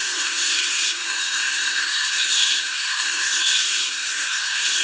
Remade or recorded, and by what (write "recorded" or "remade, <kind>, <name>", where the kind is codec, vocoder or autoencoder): remade, codec, SNAC